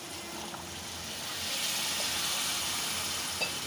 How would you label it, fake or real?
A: real